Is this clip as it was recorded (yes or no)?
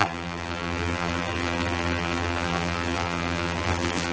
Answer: no